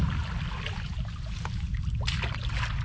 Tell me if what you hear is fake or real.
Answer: real